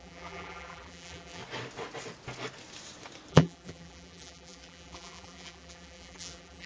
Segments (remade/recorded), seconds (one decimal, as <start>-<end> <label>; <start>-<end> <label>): 0.0-1.4 remade; 1.4-3.3 recorded; 3.3-6.7 remade